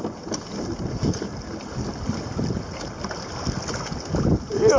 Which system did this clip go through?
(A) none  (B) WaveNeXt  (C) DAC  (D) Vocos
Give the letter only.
A